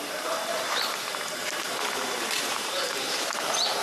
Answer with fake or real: fake